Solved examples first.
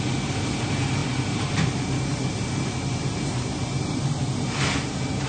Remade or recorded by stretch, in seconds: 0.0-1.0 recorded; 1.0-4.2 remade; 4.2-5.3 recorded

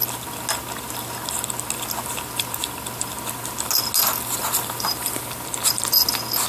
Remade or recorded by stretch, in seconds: 0.0-4.4 recorded; 4.4-5.8 remade; 5.8-6.5 recorded

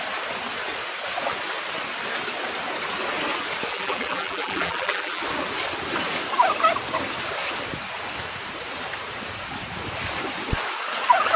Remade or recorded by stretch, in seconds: 0.0-3.7 recorded; 3.7-5.2 remade; 5.2-11.4 recorded